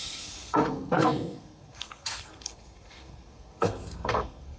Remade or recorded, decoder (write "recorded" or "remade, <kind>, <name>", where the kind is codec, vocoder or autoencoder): remade, codec, SNAC